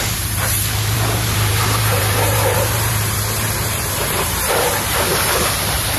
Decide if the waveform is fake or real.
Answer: fake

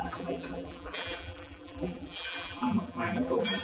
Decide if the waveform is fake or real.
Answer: fake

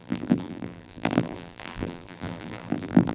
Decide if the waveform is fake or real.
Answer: fake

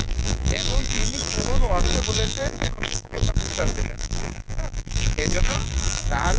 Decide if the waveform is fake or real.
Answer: fake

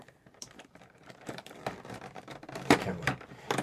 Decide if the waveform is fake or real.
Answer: fake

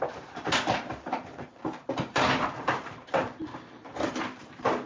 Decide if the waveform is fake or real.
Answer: fake